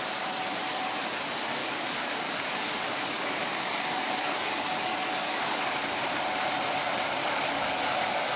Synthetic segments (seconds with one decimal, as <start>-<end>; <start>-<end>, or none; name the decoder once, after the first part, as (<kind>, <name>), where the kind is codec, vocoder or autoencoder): 1.6-5.7 (codec, DAC); 7.2-8.4